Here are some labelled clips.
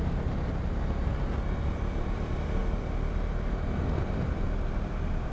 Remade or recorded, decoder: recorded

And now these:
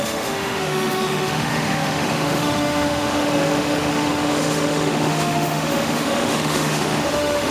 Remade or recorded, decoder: remade, autoencoder, DAC-VAE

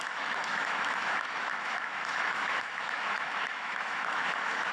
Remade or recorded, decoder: remade, autoencoder, DAC-VAE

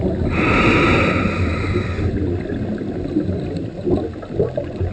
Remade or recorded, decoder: recorded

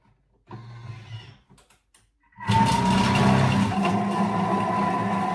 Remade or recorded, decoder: recorded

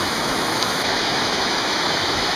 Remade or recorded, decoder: remade, autoencoder, DAC-VAE